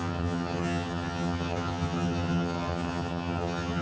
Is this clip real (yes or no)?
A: no